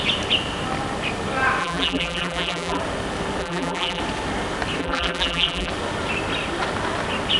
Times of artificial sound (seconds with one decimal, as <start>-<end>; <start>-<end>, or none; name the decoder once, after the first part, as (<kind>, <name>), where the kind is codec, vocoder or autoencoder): 1.6-2.8 (vocoder, BigVGAN v2); 3.4-4.0; 4.8-5.7